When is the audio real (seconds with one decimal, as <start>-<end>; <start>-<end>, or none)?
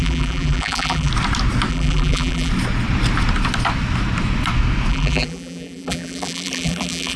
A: 1.1-1.7; 2.5-4.9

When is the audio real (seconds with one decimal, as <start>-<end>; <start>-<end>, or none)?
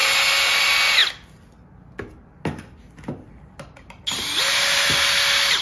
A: 0.0-5.6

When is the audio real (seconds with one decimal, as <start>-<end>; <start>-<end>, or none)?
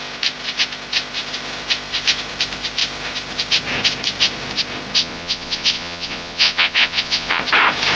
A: 0.0-5.0; 7.4-8.0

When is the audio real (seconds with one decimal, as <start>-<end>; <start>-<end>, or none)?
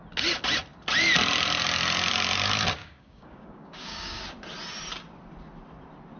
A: 0.0-2.8; 4.2-6.2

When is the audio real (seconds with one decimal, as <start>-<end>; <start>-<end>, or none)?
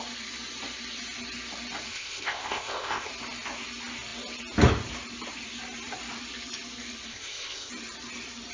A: 0.0-1.9; 3.1-7.1; 7.7-8.5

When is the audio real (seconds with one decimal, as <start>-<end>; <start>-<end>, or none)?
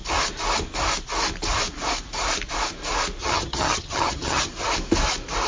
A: 0.0-3.2; 4.5-5.5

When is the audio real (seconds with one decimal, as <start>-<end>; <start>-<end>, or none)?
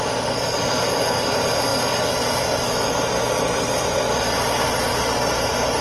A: 0.0-5.8